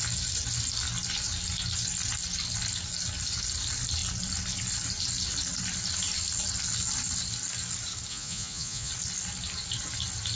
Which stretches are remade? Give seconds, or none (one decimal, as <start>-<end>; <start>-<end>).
8.1-8.9